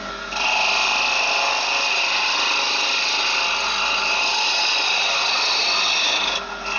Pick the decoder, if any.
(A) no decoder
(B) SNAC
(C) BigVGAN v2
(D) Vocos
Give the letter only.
A